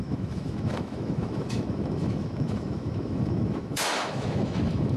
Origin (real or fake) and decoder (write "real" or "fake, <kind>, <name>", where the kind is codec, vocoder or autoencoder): fake, autoencoder, DAC-VAE